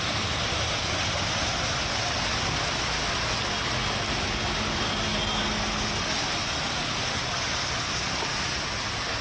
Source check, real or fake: real